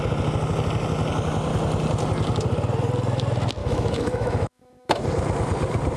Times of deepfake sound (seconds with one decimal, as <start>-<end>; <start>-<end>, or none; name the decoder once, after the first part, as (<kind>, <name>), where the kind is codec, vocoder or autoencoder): 3.6-5.0 (autoencoder, DAC-VAE)